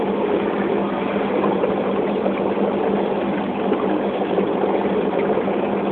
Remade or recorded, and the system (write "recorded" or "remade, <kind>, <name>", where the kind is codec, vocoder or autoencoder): recorded